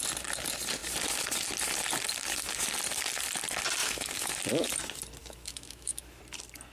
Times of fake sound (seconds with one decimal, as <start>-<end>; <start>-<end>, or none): 3.8-4.3; 5.2-6.2